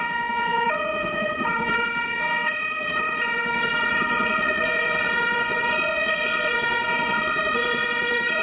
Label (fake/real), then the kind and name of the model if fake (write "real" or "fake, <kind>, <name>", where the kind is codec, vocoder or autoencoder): fake, vocoder, WaveNeXt